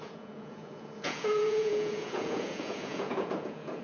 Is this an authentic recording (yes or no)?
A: no